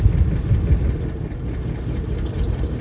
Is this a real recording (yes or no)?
yes